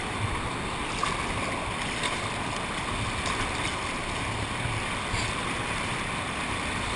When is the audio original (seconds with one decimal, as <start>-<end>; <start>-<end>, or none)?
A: 0.0-7.0

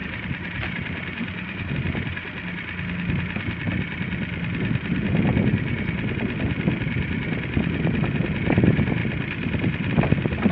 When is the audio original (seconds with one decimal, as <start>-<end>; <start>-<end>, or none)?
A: 1.7-10.5